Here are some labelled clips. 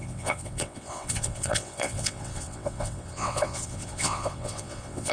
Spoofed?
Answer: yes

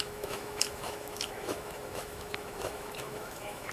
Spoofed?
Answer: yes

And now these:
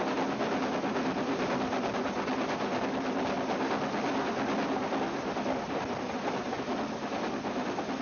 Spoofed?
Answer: no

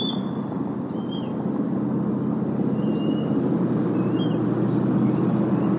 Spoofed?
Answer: no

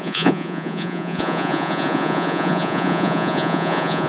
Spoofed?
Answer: yes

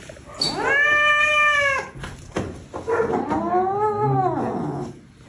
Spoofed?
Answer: no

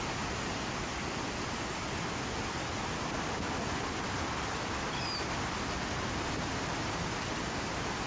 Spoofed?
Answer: no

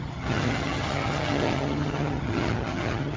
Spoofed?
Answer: yes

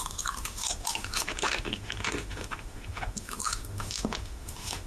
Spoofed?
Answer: yes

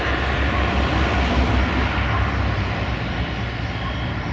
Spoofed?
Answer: no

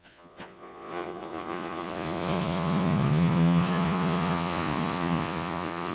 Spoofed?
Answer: yes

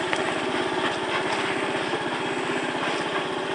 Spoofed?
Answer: no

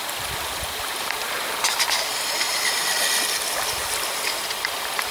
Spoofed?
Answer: no